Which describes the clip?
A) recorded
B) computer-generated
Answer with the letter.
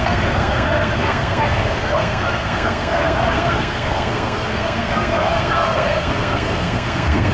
B